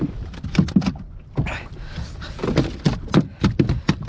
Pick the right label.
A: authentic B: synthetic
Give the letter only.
A